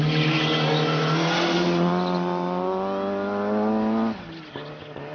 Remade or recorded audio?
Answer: recorded